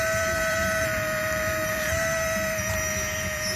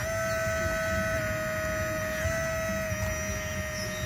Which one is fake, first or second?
first